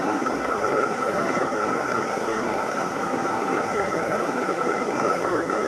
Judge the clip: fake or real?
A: fake